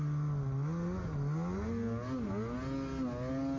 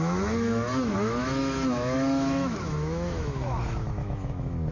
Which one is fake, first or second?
second